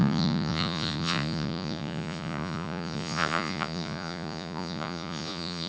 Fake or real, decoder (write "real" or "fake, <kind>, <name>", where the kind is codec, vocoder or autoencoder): fake, vocoder, Vocos